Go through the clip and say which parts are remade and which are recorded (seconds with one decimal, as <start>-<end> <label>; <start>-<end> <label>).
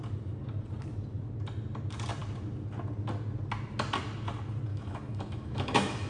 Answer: 0.0-4.7 recorded; 4.7-6.1 remade